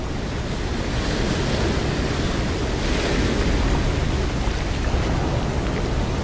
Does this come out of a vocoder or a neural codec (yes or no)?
no